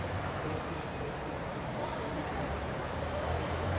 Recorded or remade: remade